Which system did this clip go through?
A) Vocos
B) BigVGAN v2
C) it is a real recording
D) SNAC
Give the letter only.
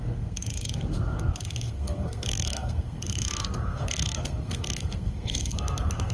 D